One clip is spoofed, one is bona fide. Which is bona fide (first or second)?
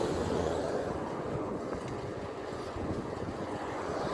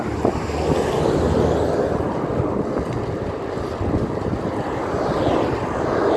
second